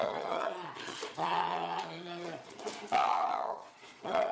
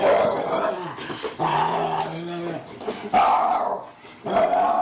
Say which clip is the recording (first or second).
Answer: second